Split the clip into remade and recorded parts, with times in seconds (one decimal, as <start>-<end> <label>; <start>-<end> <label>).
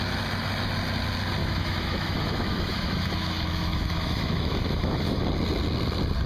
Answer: 0.0-1.4 recorded; 1.4-5.2 remade; 5.2-6.3 recorded